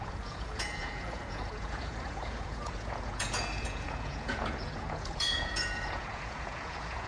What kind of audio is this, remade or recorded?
remade